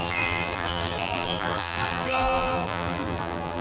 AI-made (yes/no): yes